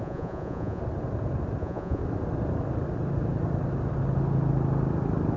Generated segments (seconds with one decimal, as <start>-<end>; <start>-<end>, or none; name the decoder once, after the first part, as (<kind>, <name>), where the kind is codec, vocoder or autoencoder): 0.0-0.8 (vocoder, Vocos); 1.6-2.0